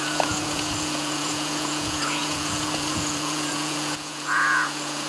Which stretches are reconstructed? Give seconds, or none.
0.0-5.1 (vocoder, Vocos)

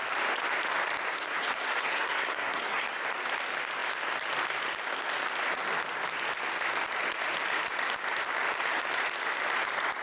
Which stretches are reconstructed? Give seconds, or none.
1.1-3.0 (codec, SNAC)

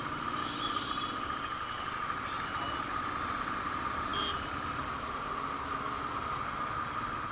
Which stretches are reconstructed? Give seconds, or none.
0.4-0.9 (codec, DAC)

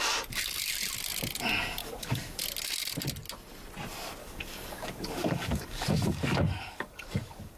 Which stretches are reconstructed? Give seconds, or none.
1.8-2.4 (codec, DAC); 4.2-7.6